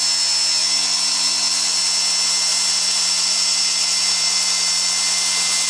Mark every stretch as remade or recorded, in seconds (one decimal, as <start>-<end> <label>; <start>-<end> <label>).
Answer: 0.0-0.6 recorded; 0.6-1.8 remade; 1.8-2.5 recorded; 2.5-4.7 remade; 4.7-5.7 recorded